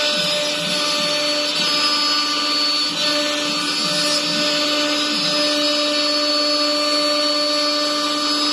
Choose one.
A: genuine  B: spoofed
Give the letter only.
A